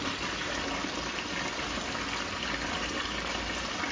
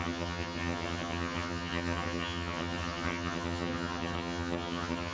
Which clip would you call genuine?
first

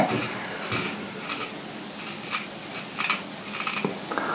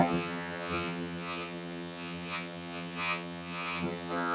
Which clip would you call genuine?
first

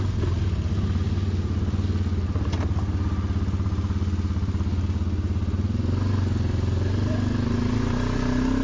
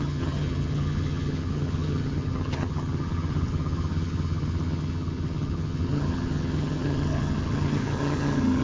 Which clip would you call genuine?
first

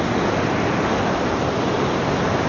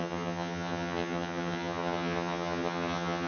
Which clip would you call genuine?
first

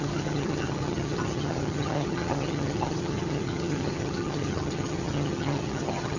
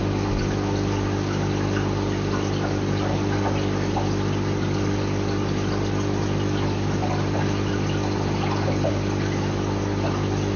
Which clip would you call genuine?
second